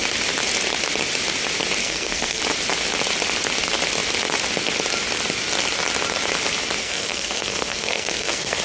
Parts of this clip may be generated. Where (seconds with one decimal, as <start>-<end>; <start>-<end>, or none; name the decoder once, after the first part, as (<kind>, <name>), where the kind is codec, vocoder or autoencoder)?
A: 1.8-2.4 (codec, SNAC); 6.8-8.6